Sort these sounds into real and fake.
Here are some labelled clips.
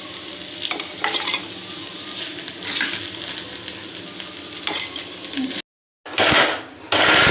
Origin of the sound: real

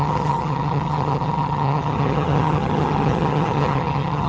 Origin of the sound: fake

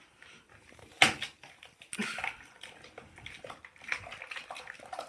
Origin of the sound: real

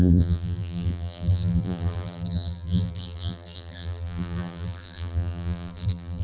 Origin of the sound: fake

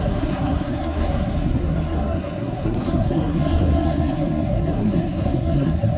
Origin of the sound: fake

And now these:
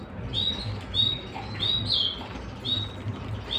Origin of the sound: real